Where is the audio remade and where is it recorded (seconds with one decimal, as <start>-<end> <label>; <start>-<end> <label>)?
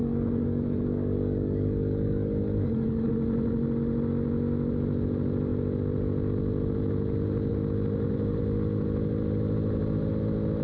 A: 0.0-3.1 remade; 3.1-10.6 recorded